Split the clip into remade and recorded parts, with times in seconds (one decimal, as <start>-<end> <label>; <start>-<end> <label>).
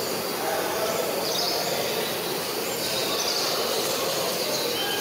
0.0-5.0 recorded